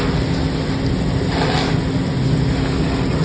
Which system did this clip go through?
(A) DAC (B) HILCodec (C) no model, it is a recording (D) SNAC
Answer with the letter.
C